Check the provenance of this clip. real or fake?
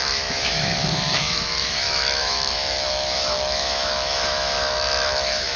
fake